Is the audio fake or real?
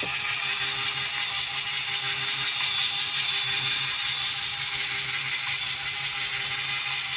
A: real